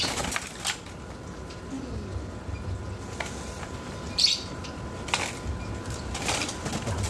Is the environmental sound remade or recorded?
recorded